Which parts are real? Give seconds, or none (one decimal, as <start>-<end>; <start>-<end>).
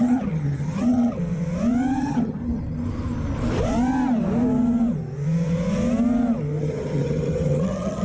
1.2-2.0; 2.4-6.6